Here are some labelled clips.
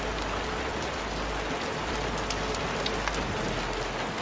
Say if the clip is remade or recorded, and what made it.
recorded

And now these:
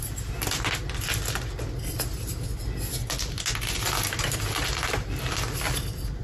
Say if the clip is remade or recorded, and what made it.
recorded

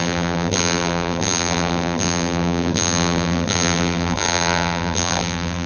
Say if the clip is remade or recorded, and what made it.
remade, vocoder, BigVGAN v2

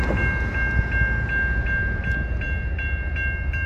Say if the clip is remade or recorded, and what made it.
recorded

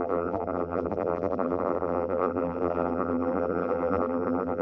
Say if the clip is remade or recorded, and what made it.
remade, vocoder, BigVGAN v2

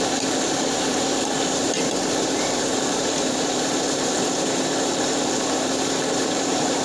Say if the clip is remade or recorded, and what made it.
remade, vocoder, BigVGAN v2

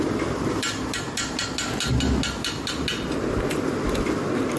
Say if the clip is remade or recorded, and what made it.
recorded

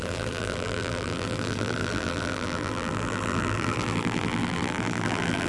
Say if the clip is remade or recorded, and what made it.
remade, vocoder, BigVGAN v2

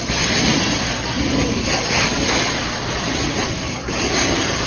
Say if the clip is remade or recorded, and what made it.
remade, vocoder, BigVGAN v2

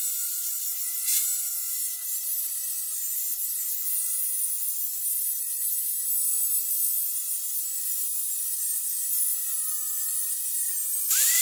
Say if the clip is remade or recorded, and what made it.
remade, vocoder, BigVGAN v2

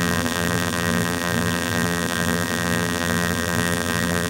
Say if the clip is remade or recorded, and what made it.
remade, vocoder, BigVGAN v2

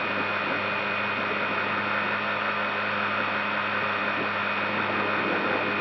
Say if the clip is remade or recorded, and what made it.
recorded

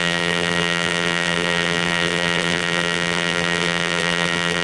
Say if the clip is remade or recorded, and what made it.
remade, vocoder, BigVGAN v2